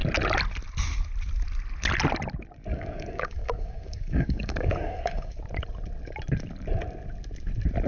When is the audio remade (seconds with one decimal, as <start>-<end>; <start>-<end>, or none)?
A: 2.7-5.4